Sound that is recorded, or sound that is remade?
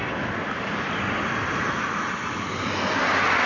recorded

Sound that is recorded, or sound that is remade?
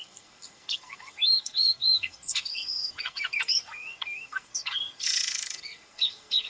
remade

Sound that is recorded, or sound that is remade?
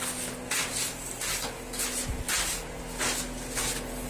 recorded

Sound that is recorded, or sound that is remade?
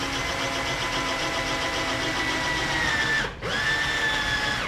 recorded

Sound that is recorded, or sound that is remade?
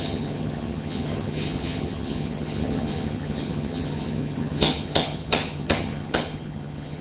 remade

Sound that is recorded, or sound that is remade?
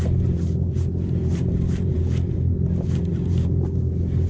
recorded